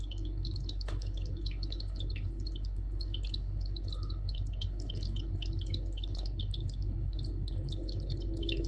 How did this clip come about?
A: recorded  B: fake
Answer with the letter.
B